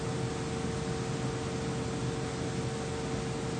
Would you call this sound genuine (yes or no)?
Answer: yes